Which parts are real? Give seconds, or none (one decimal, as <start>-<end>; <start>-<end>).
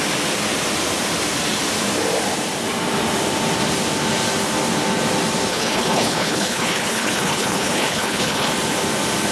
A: 0.0-5.5; 8.5-9.3